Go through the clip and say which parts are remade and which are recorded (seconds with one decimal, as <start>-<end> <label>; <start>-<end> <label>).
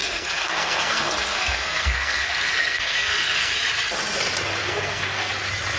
0.0-3.5 remade; 3.5-4.6 recorded; 4.6-5.3 remade; 5.3-5.8 recorded